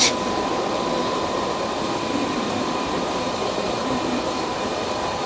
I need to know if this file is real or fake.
fake